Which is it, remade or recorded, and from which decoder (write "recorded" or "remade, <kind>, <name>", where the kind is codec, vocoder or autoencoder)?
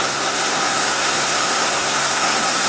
remade, codec, SNAC